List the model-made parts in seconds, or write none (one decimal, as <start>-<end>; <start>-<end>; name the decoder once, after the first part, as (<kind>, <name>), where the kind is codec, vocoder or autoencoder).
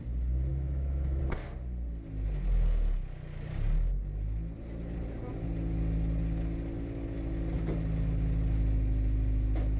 0.5-1.2 (autoencoder, DAC-VAE)